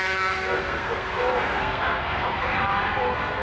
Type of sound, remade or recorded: remade